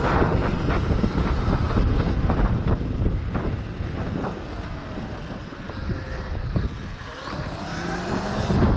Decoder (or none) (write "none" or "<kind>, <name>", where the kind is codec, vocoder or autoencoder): none